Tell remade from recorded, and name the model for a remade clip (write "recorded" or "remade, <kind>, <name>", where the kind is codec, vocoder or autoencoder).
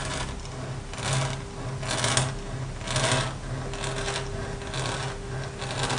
recorded